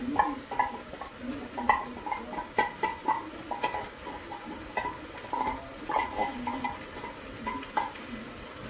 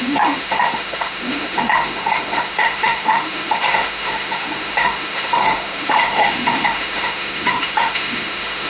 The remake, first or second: second